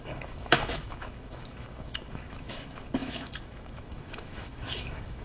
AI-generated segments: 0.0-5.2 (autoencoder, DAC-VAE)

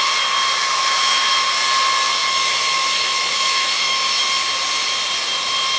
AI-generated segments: 0.6-1.3 (autoencoder, DAC-VAE); 2.2-4.2

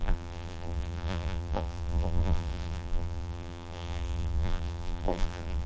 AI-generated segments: 0.0-5.7 (vocoder, BigVGAN v2)